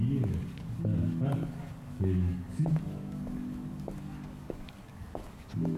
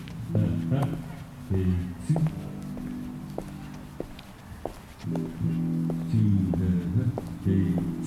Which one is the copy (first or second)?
first